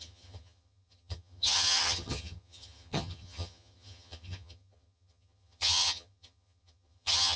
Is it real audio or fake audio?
fake